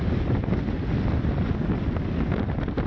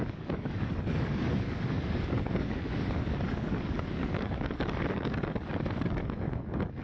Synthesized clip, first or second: second